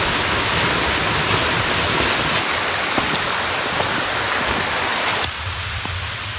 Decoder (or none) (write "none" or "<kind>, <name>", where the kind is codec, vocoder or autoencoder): none